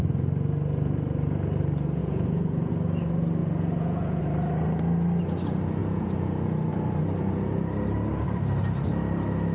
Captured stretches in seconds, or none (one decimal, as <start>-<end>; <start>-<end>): 0.0-2.0; 2.7-3.4; 4.2-5.8; 6.7-9.5